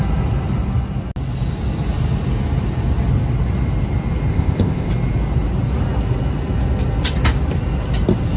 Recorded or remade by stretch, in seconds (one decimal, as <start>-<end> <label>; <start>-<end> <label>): 0.0-4.3 recorded; 4.3-4.9 remade; 4.9-8.4 recorded